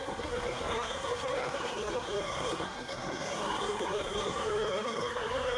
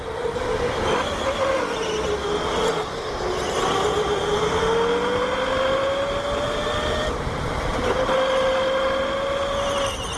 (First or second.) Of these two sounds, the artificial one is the first